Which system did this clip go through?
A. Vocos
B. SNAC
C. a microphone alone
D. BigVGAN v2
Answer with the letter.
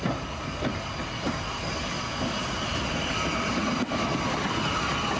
C